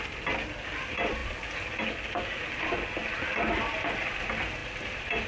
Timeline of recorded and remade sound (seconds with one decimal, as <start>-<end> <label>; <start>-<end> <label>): 0.0-1.2 recorded; 1.2-1.9 remade; 1.9-4.6 recorded; 4.6-5.3 remade